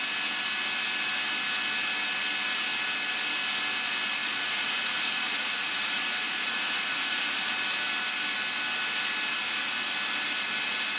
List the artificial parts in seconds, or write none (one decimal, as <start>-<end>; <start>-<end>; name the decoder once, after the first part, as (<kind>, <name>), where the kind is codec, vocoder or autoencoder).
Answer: 4.2-7.5 (vocoder, Vocos)